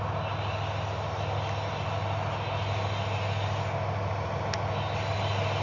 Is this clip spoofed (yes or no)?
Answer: no